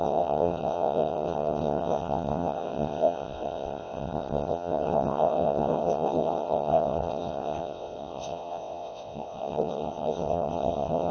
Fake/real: fake